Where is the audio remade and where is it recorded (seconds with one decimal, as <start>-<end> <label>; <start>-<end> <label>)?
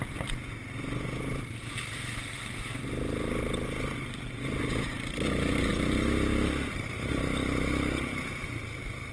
0.0-9.1 recorded